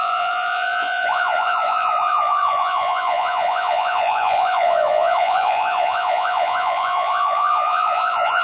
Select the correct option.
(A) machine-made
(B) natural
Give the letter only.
A